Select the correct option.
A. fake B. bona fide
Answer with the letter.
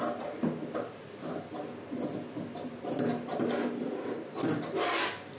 B